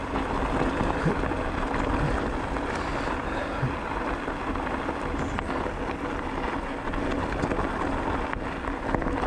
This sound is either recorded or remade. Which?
recorded